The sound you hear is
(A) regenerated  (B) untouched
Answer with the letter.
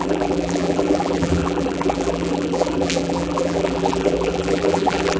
A